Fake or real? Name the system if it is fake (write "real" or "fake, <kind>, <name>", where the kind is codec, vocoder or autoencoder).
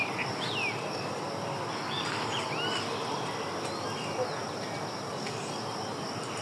real